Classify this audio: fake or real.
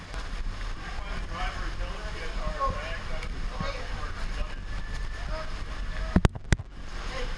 real